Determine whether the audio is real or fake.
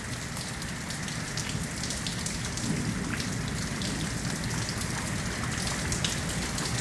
real